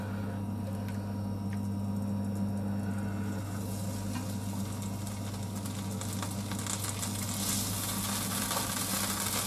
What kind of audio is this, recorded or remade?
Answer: recorded